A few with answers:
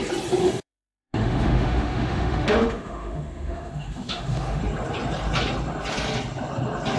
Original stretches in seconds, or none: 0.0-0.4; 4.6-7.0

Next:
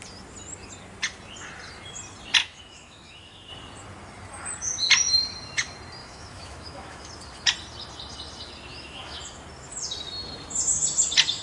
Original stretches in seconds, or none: 0.0-2.4; 3.5-6.0; 7.1-8.7; 9.2-11.4

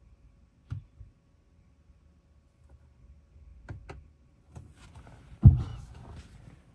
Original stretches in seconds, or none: 0.0-6.7

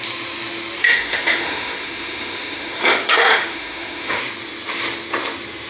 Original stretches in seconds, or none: 0.0-0.8; 4.2-5.7

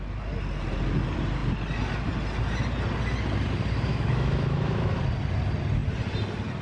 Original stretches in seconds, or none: 0.0-3.9; 5.0-6.6

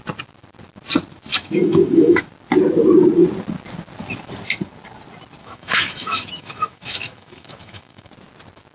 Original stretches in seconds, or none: 0.0-1.3; 2.2-5.4; 8.1-8.7

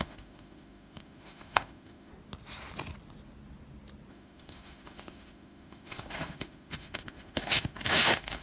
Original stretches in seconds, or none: 2.1-4.1

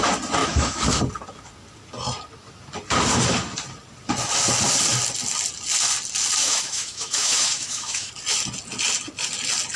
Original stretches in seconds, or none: 0.0-0.4; 1.0-6.4; 8.1-9.8